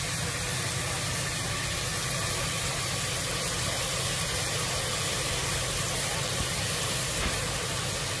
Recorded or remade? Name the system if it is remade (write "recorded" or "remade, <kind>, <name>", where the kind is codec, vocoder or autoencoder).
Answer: recorded